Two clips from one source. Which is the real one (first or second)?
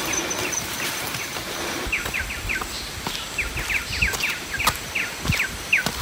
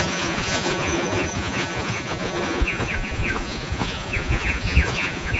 first